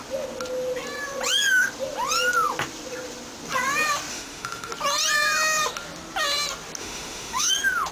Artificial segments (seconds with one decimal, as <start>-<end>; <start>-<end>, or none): 4.1-4.7; 6.8-7.5